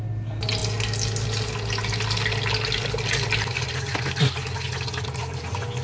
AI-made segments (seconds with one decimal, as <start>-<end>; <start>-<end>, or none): none